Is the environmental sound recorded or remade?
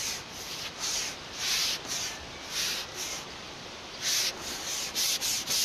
recorded